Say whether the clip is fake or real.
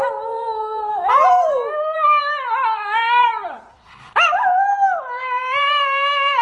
fake